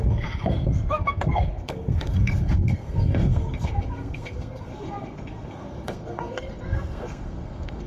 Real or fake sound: fake